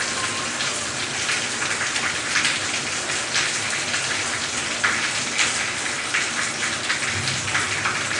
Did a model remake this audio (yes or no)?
no